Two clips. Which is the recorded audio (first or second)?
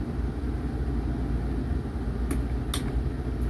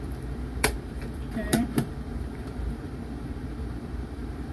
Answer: first